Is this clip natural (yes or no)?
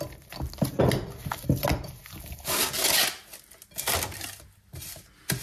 yes